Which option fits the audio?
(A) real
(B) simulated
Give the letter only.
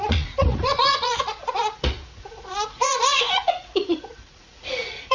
B